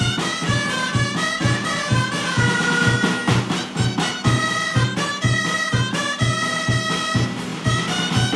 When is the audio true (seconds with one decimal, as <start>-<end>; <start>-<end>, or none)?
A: 0.0-8.4